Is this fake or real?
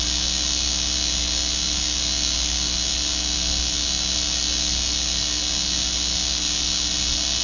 real